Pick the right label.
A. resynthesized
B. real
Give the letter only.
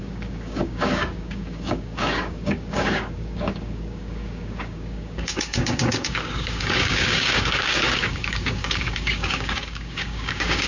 A